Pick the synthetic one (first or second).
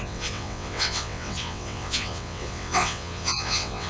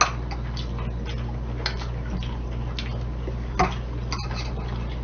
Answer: first